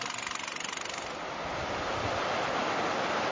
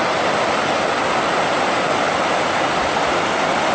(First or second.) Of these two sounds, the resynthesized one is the first